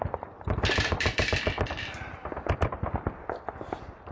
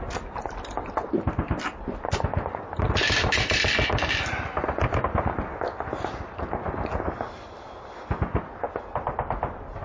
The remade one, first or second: first